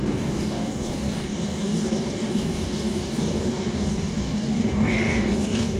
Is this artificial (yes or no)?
yes